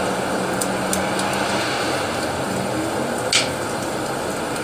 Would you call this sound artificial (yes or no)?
no